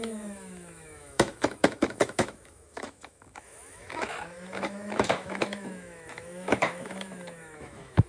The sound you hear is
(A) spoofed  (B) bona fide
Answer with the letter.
A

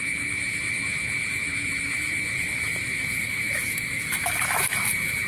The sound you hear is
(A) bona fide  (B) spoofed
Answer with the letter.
B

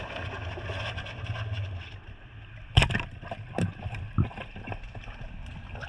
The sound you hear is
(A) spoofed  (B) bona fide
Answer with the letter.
B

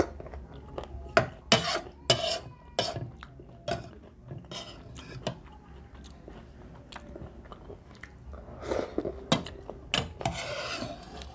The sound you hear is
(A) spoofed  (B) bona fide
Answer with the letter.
B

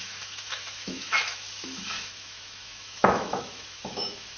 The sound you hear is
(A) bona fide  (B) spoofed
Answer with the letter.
B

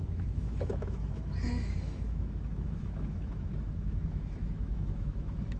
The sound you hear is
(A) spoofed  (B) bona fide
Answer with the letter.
A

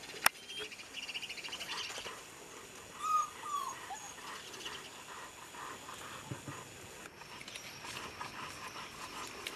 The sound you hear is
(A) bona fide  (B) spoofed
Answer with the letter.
A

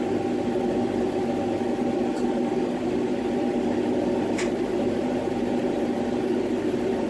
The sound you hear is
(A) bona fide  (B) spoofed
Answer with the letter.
A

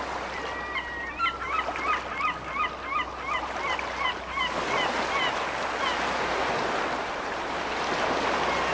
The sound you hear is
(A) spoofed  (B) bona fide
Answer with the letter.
B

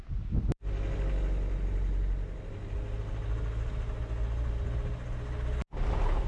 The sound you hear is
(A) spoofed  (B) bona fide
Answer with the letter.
B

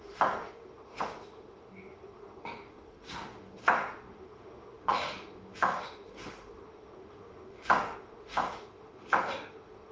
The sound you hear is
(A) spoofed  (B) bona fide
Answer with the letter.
A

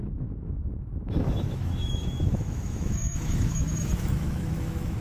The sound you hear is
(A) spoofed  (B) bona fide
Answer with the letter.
A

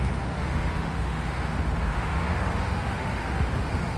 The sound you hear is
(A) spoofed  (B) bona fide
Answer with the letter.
A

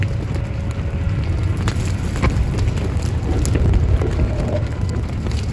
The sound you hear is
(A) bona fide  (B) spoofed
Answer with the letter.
A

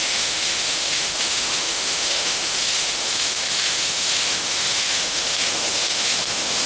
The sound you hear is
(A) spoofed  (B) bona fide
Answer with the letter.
A